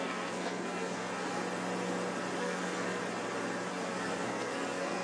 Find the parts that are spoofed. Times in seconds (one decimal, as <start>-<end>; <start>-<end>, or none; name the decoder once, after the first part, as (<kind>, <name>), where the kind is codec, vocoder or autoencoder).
0.0-1.4 (codec, SNAC); 2.4-3.0; 3.7-5.0